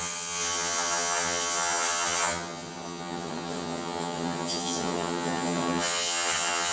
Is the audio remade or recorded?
remade